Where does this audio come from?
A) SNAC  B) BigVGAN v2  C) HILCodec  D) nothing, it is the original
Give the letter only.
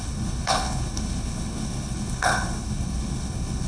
C